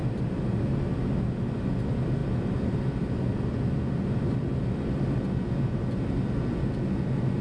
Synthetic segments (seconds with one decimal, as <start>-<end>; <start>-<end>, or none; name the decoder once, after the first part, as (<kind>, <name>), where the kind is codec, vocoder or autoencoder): none